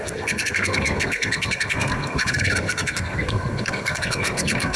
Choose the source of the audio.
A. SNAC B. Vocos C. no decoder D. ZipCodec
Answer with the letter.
A